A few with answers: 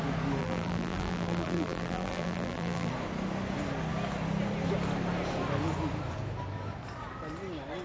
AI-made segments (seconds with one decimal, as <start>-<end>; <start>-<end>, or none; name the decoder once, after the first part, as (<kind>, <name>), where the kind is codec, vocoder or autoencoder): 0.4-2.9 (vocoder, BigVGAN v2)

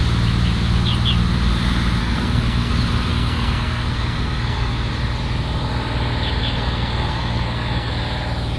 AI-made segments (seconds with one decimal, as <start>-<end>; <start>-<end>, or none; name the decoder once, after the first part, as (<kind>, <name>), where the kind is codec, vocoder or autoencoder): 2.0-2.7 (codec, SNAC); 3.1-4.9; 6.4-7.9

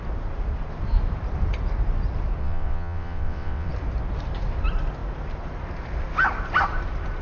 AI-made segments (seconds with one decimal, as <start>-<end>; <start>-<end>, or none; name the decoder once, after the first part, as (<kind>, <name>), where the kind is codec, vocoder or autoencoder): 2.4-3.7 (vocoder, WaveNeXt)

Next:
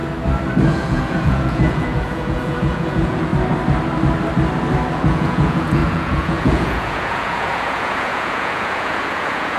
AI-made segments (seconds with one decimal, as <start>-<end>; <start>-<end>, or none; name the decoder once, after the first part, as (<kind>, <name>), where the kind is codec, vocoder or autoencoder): 0.7-3.3 (vocoder, Vocos); 4.9-9.6